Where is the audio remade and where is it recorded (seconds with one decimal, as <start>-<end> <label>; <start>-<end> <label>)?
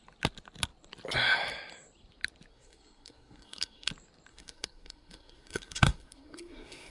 0.0-2.5 recorded; 2.5-3.9 remade; 3.9-4.3 recorded; 4.3-6.9 remade